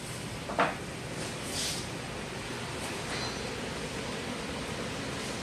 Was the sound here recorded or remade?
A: recorded